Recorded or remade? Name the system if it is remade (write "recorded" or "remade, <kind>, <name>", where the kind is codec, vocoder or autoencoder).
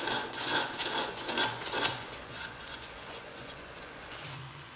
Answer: remade, vocoder, Vocos